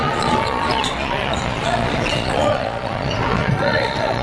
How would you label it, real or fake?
fake